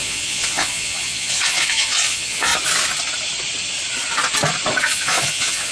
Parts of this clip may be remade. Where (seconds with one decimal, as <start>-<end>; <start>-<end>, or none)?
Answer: 0.0-2.5; 4.8-5.7